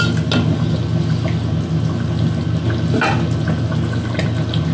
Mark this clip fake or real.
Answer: real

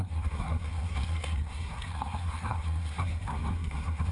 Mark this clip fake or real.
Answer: fake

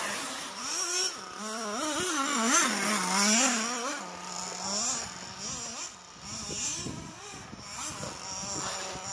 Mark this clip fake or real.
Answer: real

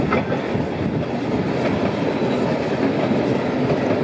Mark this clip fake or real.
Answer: real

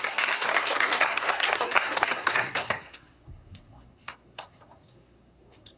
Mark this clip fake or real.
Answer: fake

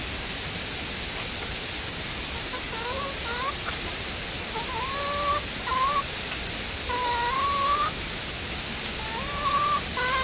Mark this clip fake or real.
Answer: real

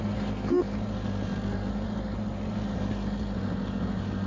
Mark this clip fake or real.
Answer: real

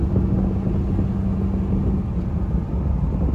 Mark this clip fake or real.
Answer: real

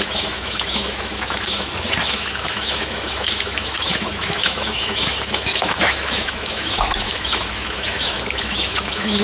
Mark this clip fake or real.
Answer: fake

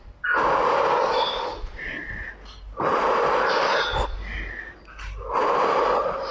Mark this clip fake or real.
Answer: real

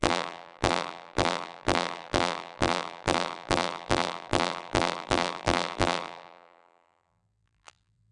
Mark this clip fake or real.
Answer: fake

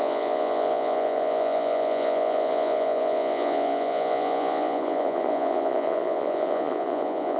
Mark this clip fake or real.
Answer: fake